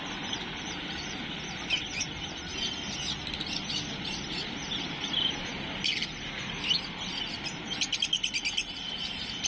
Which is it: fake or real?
real